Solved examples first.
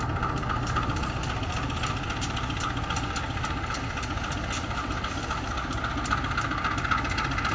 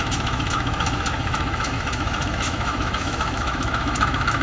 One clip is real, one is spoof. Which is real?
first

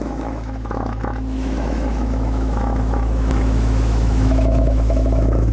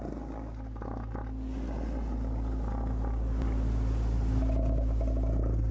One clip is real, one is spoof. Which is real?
second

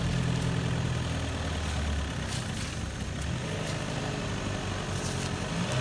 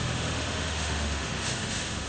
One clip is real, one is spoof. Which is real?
first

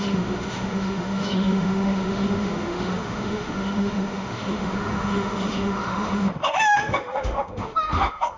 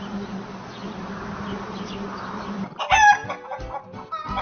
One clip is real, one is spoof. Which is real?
second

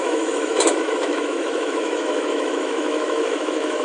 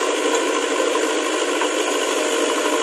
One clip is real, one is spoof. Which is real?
second